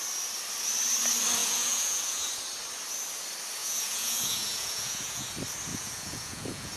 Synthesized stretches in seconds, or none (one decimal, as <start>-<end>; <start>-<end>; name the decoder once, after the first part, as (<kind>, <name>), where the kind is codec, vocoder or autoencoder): 1.4-2.3 (vocoder, Vocos); 3.6-5.3; 5.7-6.8

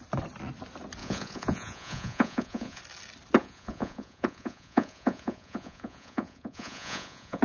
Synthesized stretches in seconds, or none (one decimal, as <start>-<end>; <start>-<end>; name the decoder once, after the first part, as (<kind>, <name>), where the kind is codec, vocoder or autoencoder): 1.0-2.8 (vocoder, Vocos); 3.4-7.4

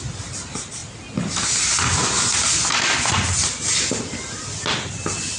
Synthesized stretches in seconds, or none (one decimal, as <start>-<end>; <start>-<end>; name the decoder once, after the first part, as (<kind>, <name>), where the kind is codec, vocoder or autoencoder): none

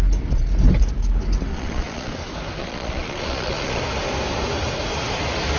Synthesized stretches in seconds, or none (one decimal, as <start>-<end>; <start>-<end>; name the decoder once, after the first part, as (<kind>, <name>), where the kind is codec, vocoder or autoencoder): 1.5-2.1 (vocoder, Vocos); 2.6-3.8

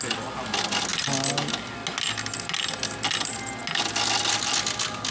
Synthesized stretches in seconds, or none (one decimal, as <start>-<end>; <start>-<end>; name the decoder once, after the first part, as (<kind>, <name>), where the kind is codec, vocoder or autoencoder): none

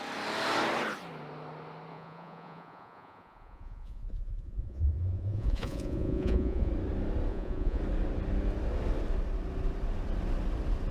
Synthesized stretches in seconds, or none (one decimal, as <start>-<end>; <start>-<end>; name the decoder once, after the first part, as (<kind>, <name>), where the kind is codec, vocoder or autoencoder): 1.9-6.7 (vocoder, Vocos); 7.3-7.8